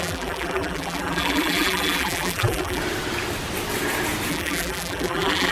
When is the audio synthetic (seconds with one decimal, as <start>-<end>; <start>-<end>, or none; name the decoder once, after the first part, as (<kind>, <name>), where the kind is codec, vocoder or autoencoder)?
0.0-2.8 (vocoder, BigVGAN v2); 4.3-5.5